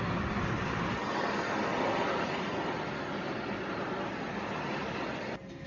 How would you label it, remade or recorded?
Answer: recorded